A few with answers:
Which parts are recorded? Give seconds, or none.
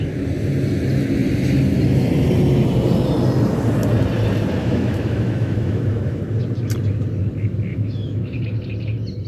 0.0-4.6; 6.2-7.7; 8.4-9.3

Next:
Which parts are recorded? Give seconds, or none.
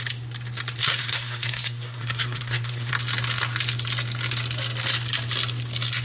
0.0-0.8; 2.9-6.0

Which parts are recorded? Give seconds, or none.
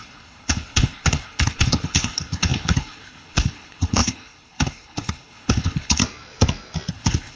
6.0-6.9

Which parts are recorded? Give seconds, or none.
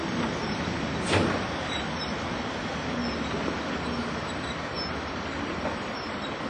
0.8-6.5